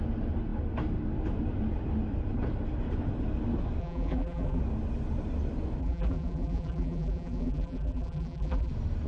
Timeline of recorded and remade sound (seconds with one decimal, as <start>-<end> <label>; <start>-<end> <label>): 0.0-3.8 recorded; 3.8-4.6 remade; 4.6-5.8 recorded; 5.8-8.7 remade; 8.7-9.1 recorded

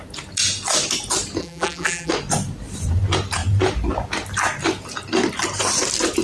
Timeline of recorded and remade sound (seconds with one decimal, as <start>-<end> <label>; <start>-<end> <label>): 0.0-1.4 recorded; 1.4-2.1 remade; 2.1-6.2 recorded

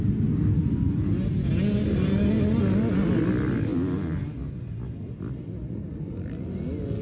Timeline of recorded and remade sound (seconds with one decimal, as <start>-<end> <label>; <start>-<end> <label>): 0.0-7.0 recorded

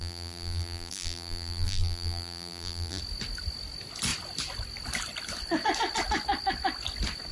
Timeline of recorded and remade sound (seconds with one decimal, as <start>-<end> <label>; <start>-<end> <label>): 0.0-3.0 remade; 3.0-7.3 recorded

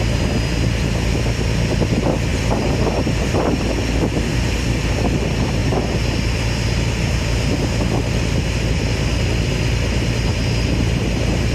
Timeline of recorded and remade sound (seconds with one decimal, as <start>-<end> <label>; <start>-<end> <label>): 0.0-2.3 recorded; 2.3-4.1 remade; 4.1-11.5 recorded